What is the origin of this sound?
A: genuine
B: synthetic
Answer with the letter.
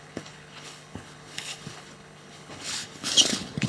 B